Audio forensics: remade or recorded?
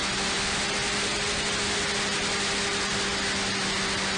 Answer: recorded